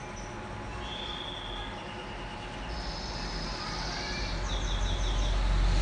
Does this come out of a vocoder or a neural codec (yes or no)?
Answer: no